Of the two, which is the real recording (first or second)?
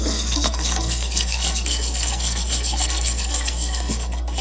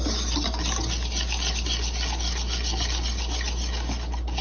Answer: second